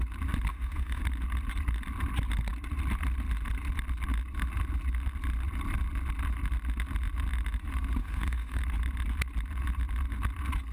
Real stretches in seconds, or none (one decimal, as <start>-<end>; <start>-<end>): 0.0-0.5; 1.0-8.0; 8.6-10.7